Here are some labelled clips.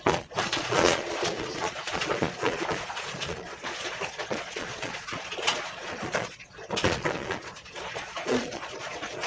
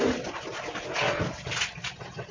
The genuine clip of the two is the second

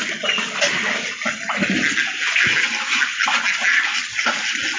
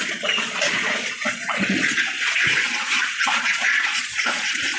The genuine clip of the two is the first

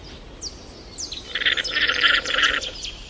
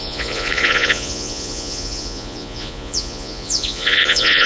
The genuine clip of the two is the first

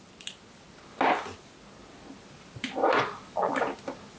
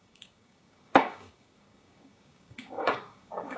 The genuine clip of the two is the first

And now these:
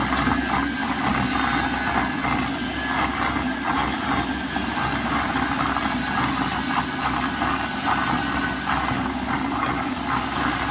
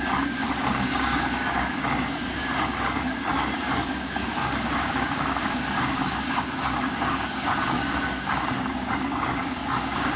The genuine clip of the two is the first